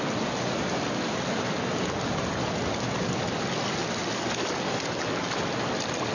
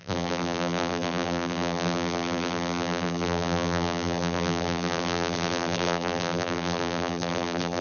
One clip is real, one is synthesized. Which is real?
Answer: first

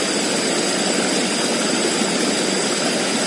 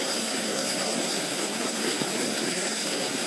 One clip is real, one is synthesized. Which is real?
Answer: first